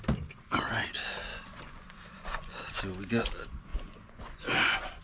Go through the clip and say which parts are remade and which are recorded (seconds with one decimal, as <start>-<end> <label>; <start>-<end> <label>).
0.0-1.3 recorded; 1.3-2.8 remade; 2.8-3.7 recorded; 3.7-5.0 remade